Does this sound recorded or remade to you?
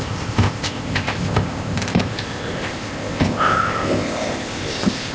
remade